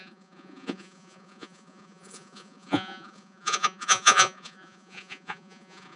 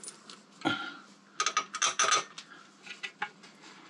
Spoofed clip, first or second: first